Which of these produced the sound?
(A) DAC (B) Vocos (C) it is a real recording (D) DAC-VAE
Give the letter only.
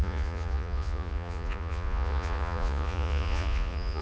B